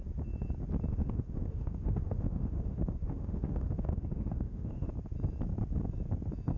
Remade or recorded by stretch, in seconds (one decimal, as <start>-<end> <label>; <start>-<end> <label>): 0.0-0.9 recorded; 0.9-4.9 remade; 4.9-6.6 recorded